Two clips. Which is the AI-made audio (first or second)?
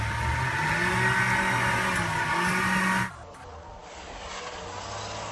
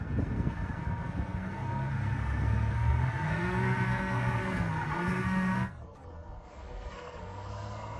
second